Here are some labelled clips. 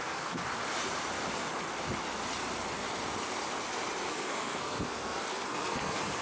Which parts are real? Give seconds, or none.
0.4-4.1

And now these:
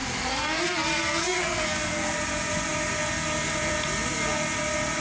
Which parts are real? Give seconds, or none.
0.6-1.2; 2.1-5.0